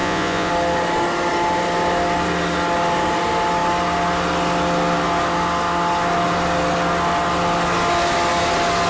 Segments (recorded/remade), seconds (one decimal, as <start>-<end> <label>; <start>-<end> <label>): 0.0-0.5 remade; 0.5-8.9 recorded